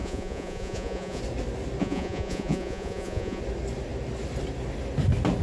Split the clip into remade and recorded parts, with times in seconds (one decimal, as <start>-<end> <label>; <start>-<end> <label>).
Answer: 0.0-1.2 remade; 1.2-1.8 recorded; 1.8-3.4 remade; 3.4-5.4 recorded